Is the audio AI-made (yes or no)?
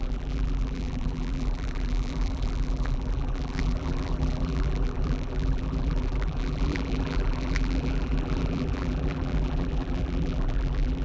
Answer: yes